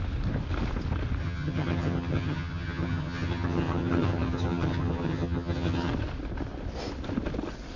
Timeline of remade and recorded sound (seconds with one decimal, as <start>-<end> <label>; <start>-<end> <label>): 0.0-1.2 recorded; 1.2-5.9 remade; 5.9-7.8 recorded